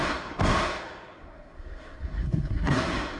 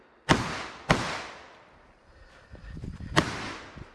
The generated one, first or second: first